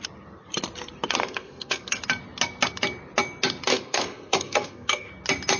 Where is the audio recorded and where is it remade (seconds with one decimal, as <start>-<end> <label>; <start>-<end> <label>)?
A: 0.0-1.2 recorded; 1.2-2.0 remade; 2.0-3.7 recorded; 3.7-5.1 remade; 5.1-5.6 recorded